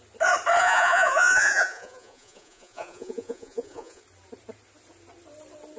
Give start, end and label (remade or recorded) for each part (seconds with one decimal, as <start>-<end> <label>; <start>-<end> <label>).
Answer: 0.0-0.6 recorded; 0.6-4.0 remade; 4.0-5.8 recorded